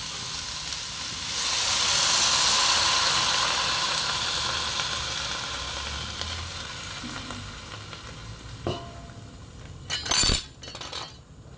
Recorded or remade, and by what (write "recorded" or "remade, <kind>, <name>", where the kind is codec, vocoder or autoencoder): recorded